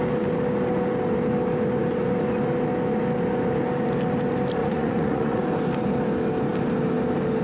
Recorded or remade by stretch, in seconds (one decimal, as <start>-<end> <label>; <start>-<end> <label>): 0.0-4.6 recorded; 4.6-5.4 remade; 5.4-7.4 recorded